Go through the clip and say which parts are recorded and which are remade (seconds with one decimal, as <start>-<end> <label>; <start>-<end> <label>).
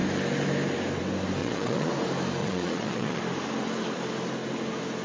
0.0-1.4 recorded; 1.4-1.9 remade; 1.9-2.4 recorded; 2.4-3.2 remade; 3.2-5.0 recorded